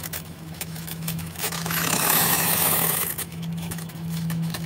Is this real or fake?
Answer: fake